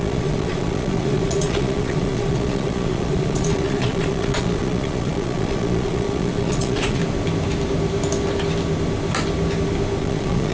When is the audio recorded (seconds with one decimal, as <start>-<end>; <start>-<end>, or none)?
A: 7.0-10.0